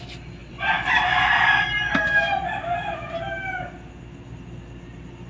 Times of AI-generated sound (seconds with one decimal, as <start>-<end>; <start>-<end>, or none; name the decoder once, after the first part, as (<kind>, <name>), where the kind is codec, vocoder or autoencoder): 0.4-3.6 (vocoder, BigVGAN v2)